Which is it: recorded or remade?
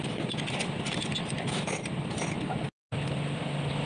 recorded